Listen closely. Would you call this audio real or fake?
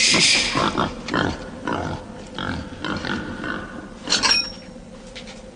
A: real